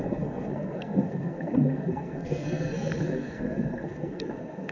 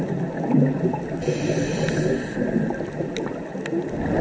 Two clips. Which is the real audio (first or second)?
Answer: second